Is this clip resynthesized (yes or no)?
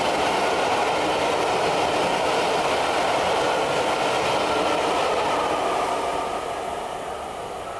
no